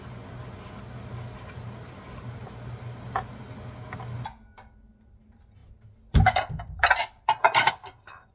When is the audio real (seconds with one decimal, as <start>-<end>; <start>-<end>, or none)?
0.0-8.3